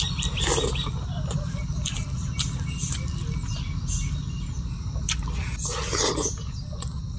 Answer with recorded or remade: recorded